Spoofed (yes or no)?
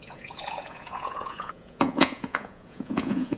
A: yes